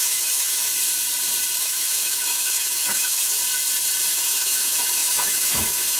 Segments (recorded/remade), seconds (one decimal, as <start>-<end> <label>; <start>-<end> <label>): 0.0-0.7 remade; 0.7-1.6 recorded; 1.6-3.4 remade; 3.4-4.1 recorded; 4.1-6.0 remade